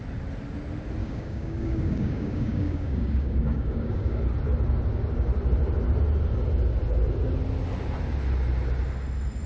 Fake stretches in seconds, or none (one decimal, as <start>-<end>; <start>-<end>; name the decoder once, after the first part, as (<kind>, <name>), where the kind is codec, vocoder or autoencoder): 1.0-4.2 (codec, DAC)